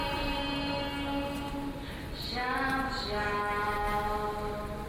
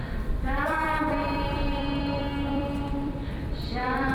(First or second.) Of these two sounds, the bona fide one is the first